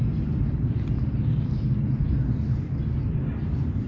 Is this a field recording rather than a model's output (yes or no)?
yes